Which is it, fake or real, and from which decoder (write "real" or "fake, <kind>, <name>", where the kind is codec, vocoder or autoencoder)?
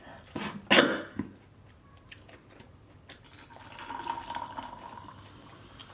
real